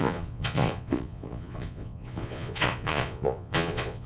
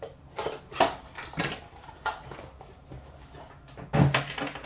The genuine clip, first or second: second